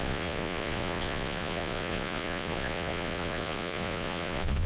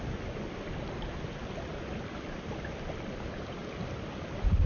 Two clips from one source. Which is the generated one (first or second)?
first